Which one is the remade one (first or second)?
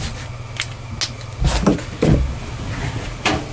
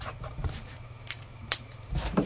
second